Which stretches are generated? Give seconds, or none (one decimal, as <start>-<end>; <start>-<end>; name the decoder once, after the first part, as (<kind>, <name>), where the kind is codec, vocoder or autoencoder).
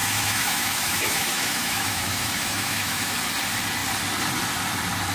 0.0-3.1 (autoencoder, DAC-VAE)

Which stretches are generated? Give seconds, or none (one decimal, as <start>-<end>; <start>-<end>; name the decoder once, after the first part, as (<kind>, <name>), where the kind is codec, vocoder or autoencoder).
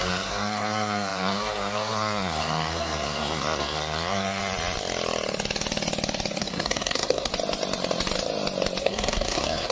0.0-4.4 (codec, SNAC); 6.4-7.3; 8.8-9.7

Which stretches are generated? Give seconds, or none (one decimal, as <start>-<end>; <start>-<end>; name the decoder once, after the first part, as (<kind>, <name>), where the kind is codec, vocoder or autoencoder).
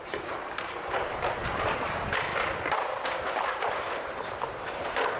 0.0-2.3 (vocoder, BigVGAN v2); 3.2-5.2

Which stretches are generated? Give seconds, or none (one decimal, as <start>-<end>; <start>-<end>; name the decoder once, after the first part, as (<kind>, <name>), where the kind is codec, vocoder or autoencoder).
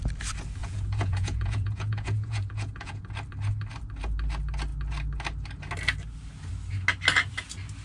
0.6-3.0 (vocoder, Vocos)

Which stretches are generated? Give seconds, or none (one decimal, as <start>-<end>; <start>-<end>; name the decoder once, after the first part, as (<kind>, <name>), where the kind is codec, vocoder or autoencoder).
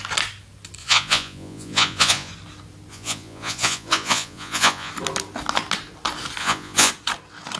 0.8-2.3 (vocoder, Vocos); 2.9-4.9; 6.4-6.9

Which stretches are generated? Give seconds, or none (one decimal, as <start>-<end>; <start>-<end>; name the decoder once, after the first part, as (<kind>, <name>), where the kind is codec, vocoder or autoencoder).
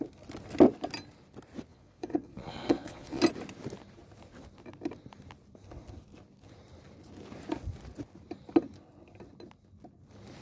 1.7-3.2 (vocoder, Vocos)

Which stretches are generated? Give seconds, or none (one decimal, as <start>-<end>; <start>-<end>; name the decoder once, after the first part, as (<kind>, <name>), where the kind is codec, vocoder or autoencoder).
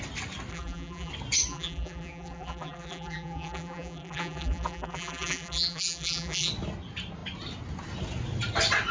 0.5-1.1 (vocoder, BigVGAN v2); 1.5-6.5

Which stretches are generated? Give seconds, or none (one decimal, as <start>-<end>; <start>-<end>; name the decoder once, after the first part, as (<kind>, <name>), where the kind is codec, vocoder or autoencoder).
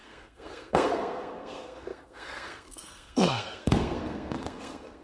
0.0-5.0 (codec, SNAC)